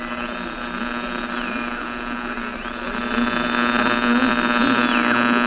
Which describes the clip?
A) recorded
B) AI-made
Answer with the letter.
A